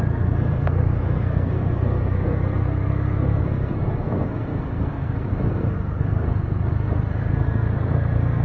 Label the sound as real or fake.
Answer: fake